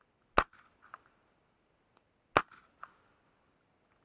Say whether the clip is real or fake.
real